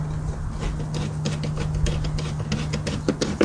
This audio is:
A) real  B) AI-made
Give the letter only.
A